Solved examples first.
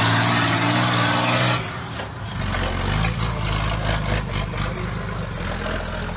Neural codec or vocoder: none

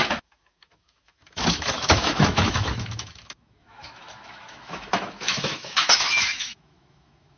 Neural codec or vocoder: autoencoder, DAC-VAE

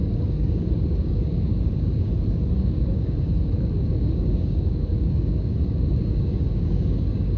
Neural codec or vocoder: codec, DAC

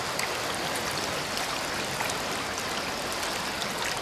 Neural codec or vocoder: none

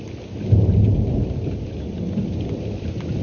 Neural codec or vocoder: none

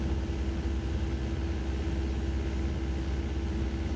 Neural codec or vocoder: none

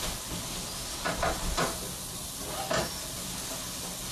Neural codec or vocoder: none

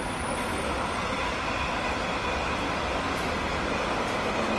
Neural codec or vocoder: none